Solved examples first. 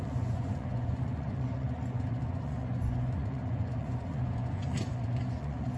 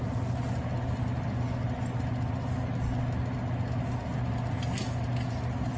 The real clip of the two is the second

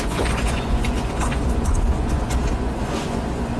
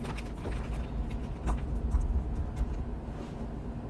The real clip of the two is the second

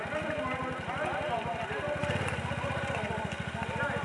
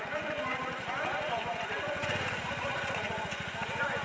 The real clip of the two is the first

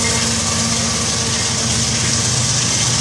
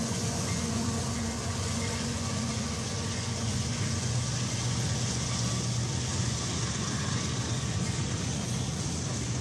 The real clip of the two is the first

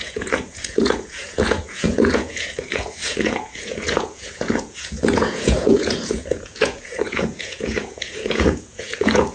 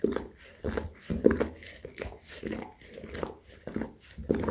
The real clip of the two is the second